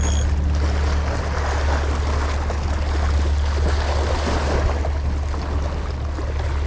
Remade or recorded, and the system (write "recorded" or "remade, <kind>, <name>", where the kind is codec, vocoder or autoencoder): recorded